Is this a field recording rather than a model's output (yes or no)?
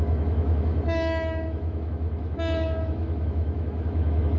no